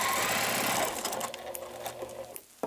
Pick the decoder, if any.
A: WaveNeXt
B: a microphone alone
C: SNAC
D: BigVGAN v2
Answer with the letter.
B